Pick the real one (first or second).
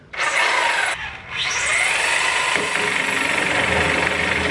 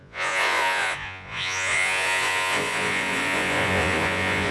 first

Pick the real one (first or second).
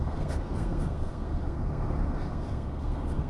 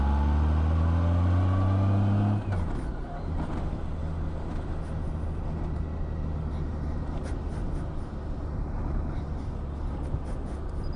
second